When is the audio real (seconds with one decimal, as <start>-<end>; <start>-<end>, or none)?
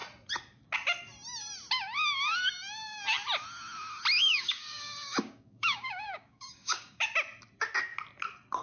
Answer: 0.0-4.2; 7.0-8.6